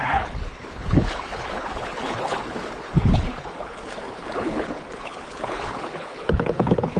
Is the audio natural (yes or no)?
no